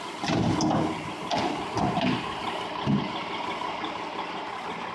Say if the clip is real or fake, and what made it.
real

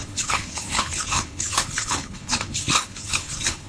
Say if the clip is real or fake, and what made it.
fake, codec, HILCodec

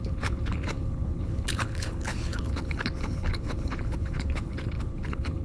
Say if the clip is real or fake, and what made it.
fake, codec, HILCodec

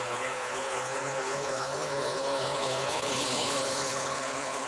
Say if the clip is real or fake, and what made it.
fake, codec, HILCodec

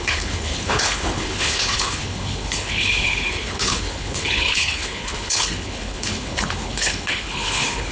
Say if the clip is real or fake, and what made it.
fake, codec, HILCodec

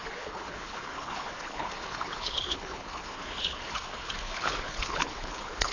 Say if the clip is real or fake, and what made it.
fake, codec, HILCodec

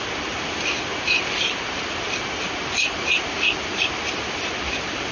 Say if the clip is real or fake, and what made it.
real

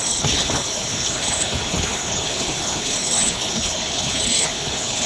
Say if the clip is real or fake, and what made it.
fake, codec, HILCodec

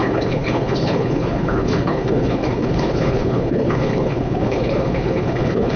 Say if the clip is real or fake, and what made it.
fake, codec, HILCodec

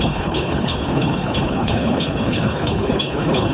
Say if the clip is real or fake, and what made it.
fake, codec, HILCodec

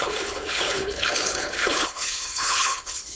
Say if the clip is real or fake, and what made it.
fake, codec, HILCodec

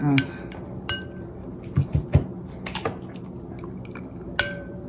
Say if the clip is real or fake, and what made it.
real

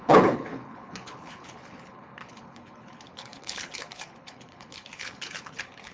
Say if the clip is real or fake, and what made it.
fake, codec, HILCodec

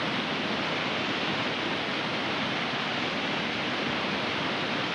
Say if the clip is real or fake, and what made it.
real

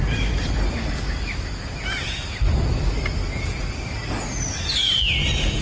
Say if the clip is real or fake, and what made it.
real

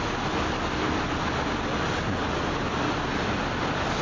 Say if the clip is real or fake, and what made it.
real